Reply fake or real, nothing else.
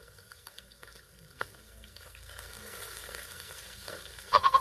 fake